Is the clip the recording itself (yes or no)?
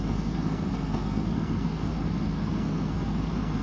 no